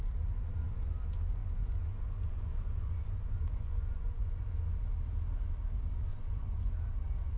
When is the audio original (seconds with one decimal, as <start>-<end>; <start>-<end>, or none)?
0.0-1.4; 4.3-6.1; 6.7-7.4